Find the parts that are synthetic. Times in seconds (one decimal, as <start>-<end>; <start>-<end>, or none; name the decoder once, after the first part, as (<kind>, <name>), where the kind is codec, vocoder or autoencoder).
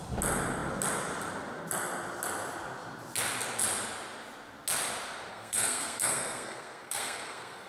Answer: 5.3-7.7 (codec, SNAC)